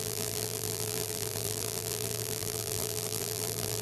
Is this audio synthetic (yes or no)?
yes